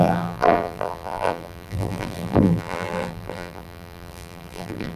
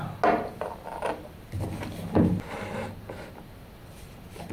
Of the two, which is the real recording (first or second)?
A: second